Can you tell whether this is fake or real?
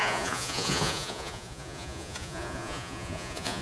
fake